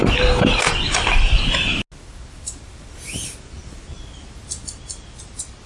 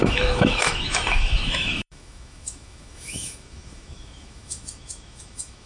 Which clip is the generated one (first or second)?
second